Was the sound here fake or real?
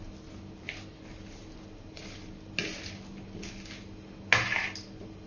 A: real